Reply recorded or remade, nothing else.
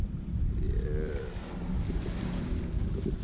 recorded